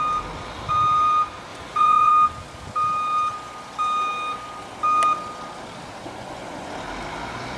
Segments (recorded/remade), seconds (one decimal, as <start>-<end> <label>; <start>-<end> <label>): 0.0-1.5 recorded; 1.5-2.1 remade; 2.1-6.0 recorded; 6.0-6.7 remade; 6.7-7.6 recorded